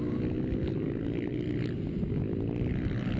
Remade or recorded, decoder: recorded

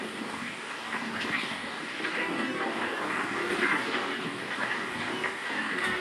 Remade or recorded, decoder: remade, codec, DAC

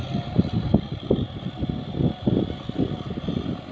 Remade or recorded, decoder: recorded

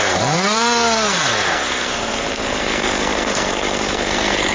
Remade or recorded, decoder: remade, codec, SNAC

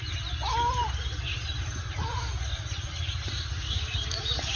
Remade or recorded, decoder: recorded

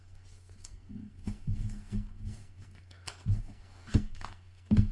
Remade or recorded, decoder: remade, codec, SNAC